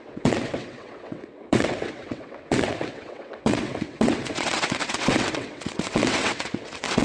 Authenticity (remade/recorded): remade